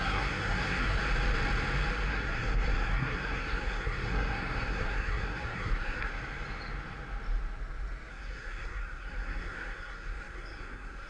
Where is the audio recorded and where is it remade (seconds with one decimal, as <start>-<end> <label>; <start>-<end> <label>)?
0.0-1.0 remade; 1.0-2.1 recorded; 2.1-6.1 remade; 6.1-8.1 recorded; 8.1-11.1 remade